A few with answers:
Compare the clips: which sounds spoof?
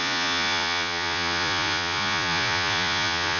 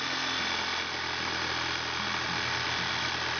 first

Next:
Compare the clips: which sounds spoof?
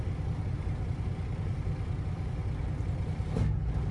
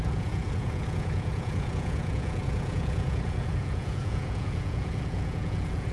second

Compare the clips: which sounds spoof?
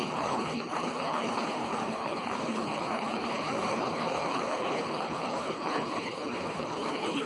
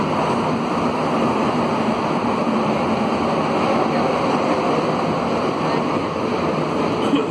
first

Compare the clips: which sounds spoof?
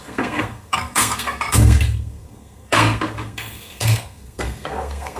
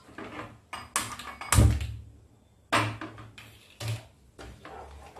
first